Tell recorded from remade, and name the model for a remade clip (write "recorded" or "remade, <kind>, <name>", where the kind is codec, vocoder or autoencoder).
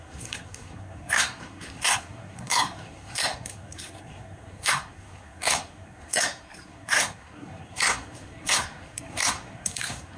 remade, codec, SNAC